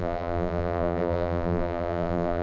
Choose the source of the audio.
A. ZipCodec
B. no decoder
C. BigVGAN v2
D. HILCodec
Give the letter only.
C